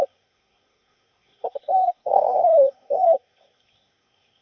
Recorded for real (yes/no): no